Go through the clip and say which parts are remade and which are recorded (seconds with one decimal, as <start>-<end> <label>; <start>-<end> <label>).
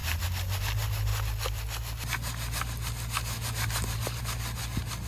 0.0-5.1 recorded